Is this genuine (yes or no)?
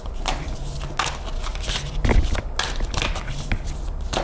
yes